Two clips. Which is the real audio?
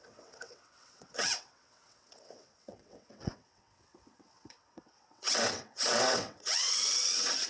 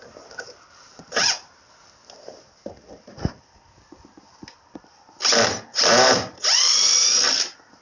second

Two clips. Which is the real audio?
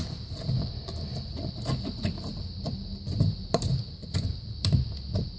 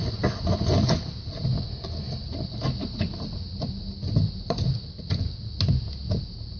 second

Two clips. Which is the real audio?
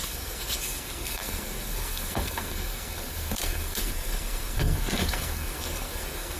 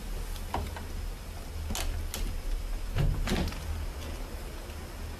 second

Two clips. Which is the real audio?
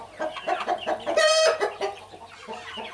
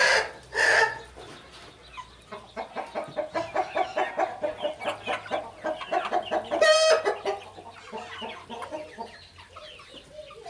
second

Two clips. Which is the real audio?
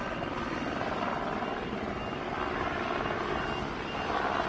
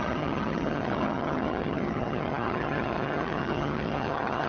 first